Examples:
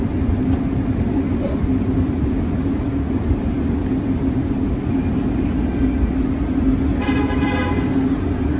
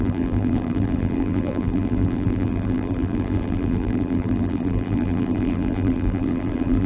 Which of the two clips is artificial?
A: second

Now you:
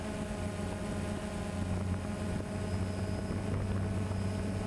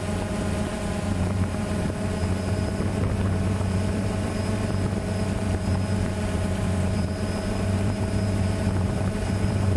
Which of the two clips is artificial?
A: second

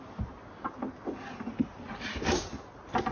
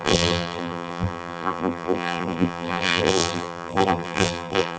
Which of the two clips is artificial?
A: second